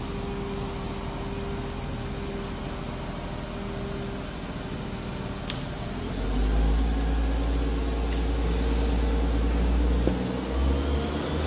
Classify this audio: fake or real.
real